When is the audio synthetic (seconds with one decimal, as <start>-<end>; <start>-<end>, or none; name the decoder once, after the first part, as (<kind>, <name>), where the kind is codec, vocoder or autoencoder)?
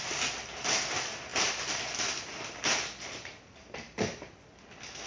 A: none